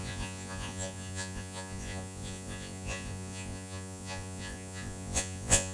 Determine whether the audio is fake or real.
fake